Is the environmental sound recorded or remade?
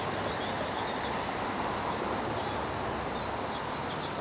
recorded